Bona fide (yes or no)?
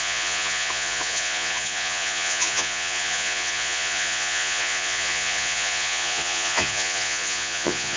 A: no